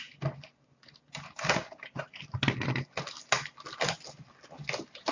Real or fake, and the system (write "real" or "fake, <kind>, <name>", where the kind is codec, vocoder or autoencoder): real